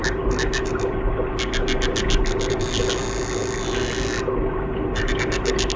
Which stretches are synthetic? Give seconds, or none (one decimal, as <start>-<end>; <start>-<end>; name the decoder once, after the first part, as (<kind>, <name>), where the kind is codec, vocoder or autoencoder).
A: none

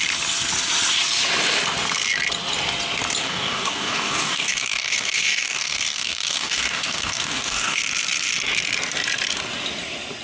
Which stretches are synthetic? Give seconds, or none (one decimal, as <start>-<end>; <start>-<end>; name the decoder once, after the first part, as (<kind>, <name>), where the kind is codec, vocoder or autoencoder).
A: 3.2-7.8 (codec, DAC)

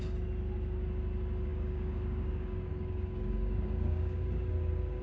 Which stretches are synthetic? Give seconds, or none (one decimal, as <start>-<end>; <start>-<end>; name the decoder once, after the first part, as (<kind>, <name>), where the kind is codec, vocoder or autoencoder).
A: 1.5-4.5 (codec, DAC)